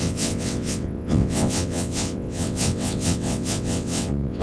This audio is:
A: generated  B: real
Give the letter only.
A